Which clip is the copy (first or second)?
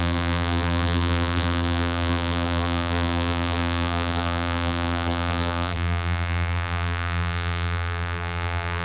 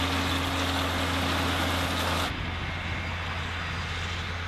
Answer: first